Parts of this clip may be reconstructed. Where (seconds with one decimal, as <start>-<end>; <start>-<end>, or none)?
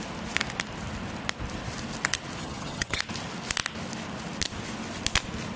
2.4-3.0